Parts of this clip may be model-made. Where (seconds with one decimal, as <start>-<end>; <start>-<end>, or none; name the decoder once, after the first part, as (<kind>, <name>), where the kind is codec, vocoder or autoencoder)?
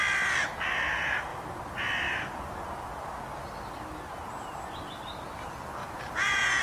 5.8-6.6 (vocoder, Vocos)